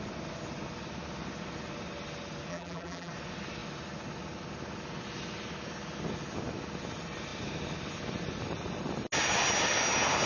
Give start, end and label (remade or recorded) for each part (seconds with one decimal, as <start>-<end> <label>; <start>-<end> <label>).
0.0-2.5 recorded; 2.5-3.1 remade; 3.1-10.3 recorded